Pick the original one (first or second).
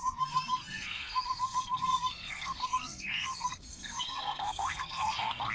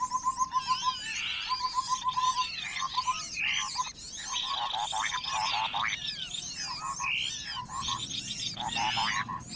second